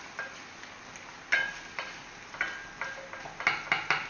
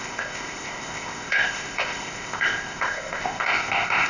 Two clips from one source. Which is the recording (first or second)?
first